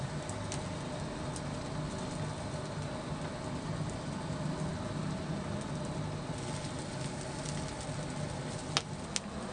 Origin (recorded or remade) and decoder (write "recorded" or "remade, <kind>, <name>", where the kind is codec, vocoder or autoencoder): recorded